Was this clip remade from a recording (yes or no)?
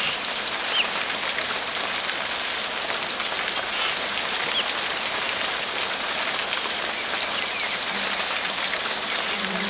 no